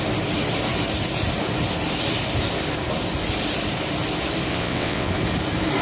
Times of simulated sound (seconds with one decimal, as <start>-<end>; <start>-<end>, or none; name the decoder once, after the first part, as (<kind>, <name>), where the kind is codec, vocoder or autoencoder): 4.5-5.1 (vocoder, WaveNeXt)